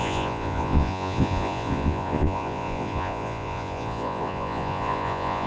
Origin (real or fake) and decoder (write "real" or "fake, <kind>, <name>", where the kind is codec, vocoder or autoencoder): fake, vocoder, Vocos